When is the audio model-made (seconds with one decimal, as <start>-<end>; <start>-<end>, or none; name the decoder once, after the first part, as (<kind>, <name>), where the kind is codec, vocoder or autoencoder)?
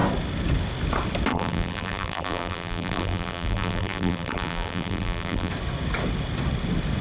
1.3-5.5 (vocoder, BigVGAN v2)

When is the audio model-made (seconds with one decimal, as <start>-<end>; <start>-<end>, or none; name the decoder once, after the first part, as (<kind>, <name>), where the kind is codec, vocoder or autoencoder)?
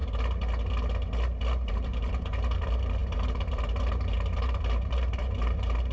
1.7-5.9 (vocoder, BigVGAN v2)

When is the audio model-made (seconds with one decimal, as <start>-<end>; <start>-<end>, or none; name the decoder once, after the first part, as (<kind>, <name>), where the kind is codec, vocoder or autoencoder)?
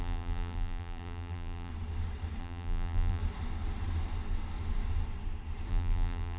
0.0-1.7 (vocoder, BigVGAN v2); 2.4-3.2; 5.7-6.4